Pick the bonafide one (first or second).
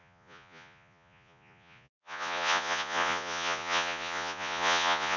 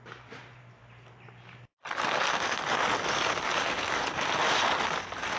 second